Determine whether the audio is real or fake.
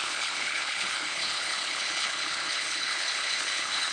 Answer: fake